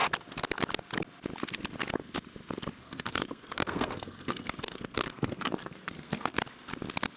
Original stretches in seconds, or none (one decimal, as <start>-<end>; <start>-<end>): 0.0-2.8; 6.4-7.2